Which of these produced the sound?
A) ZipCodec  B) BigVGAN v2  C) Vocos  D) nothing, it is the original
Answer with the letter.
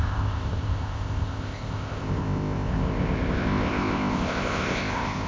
A